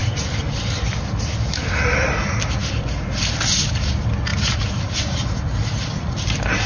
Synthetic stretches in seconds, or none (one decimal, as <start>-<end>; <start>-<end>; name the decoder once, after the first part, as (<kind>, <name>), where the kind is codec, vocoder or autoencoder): 0.0-1.3 (vocoder, BigVGAN v2); 4.3-5.2